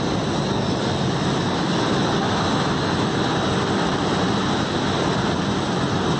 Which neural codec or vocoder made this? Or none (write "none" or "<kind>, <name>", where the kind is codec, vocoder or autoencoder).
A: none